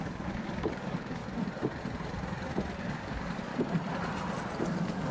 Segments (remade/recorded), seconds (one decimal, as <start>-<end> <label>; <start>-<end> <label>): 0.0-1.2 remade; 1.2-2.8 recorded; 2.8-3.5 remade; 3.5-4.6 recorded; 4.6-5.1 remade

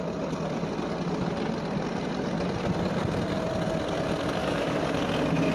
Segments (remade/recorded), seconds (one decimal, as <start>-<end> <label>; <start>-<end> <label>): 0.0-4.4 recorded; 4.4-4.9 remade; 4.9-5.5 recorded

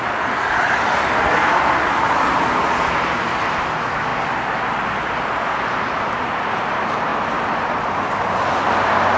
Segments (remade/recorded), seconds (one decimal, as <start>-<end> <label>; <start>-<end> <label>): 0.0-9.2 recorded